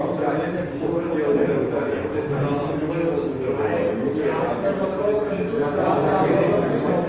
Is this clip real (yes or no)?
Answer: yes